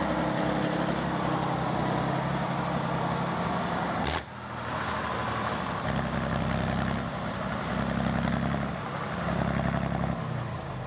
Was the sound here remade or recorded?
recorded